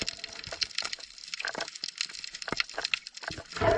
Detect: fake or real real